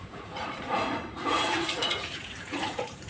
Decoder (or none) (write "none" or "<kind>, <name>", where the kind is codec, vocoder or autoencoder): vocoder, Vocos